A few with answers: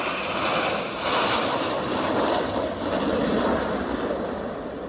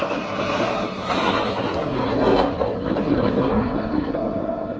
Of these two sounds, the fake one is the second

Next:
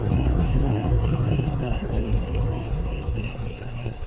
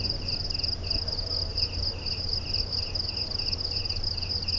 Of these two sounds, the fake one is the first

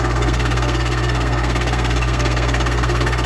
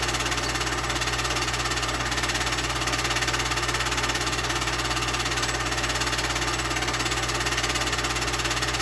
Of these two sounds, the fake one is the first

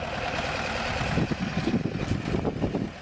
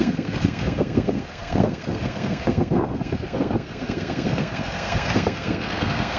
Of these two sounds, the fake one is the second